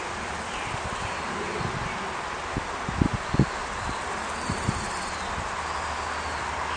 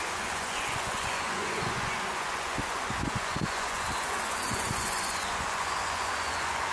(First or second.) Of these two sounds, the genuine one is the first